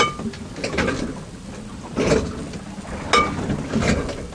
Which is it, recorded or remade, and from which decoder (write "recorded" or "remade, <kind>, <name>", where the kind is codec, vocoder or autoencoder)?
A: recorded